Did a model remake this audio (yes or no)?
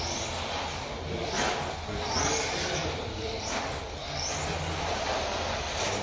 no